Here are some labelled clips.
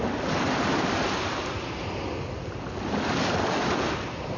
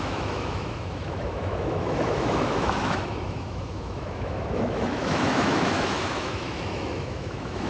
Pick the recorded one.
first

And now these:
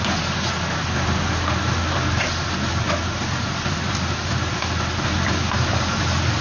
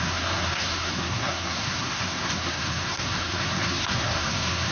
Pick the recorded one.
first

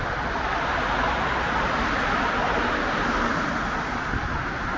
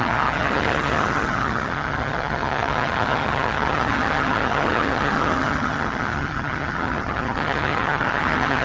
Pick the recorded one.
first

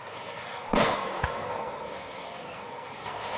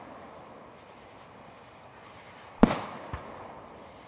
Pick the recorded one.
second